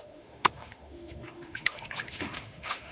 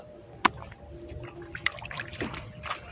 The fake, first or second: first